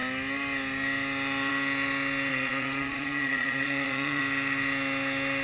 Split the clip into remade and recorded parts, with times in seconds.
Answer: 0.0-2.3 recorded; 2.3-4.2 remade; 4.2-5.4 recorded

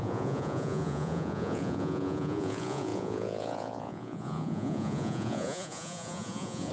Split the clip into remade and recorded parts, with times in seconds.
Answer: 0.0-6.7 remade

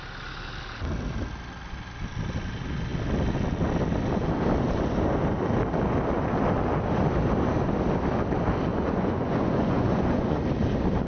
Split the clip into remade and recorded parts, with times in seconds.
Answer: 0.0-8.7 recorded; 8.7-10.4 remade; 10.4-11.1 recorded

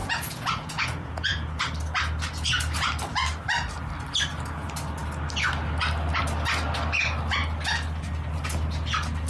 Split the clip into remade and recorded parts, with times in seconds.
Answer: 0.0-1.6 remade; 1.6-9.3 recorded

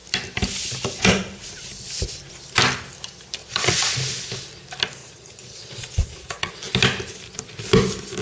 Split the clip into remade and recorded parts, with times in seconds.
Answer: 0.0-3.4 recorded; 3.4-3.9 remade; 3.9-5.0 recorded; 5.0-6.5 remade; 6.5-8.2 recorded

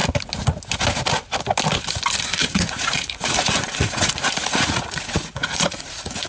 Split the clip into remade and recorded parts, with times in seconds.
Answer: 0.0-2.4 recorded; 2.4-6.3 remade